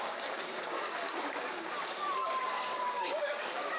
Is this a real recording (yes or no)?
no